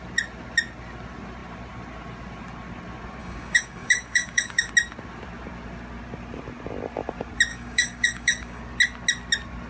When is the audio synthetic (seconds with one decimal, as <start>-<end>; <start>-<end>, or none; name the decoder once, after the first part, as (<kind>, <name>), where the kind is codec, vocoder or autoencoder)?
3.2-4.7 (codec, DAC); 7.5-8.6